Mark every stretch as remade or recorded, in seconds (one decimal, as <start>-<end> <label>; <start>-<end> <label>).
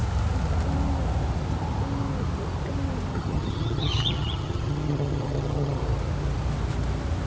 0.0-3.1 recorded; 3.1-5.8 remade; 5.8-7.3 recorded